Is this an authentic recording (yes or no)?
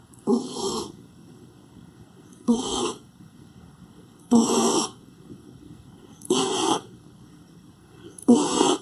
no